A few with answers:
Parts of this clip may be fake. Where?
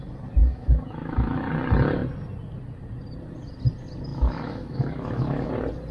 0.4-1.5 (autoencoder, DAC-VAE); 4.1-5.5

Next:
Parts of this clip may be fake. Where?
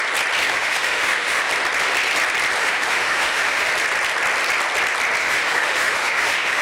0.4-1.5 (autoencoder, DAC-VAE); 2.6-3.7; 5.2-6.6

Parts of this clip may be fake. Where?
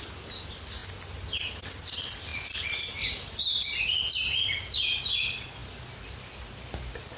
none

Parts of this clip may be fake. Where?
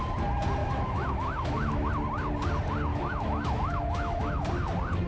0.6-1.9 (autoencoder, DAC-VAE); 2.9-4.5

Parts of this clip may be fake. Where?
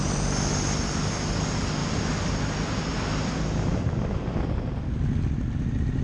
none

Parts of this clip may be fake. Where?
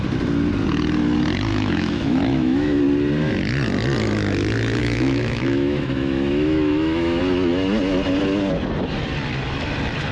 1.5-2.8 (autoencoder, DAC-VAE); 4.8-7.2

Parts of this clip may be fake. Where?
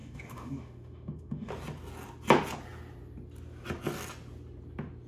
0.0-1.5 (autoencoder, DAC-VAE)